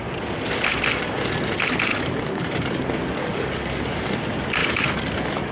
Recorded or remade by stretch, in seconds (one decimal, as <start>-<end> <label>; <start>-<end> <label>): 0.0-1.9 recorded; 1.9-2.8 remade; 2.8-3.2 recorded; 3.2-4.0 remade; 4.0-4.6 recorded; 4.6-5.5 remade